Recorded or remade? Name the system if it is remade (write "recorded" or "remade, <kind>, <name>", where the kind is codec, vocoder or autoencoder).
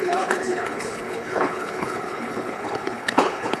remade, codec, HILCodec